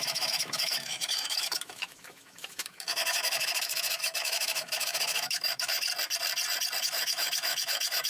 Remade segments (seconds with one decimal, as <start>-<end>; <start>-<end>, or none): 0.0-5.9; 6.8-8.1